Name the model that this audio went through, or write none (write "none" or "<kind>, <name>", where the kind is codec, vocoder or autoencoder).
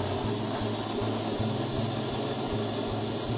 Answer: none